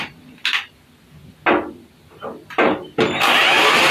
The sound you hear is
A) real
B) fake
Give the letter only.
A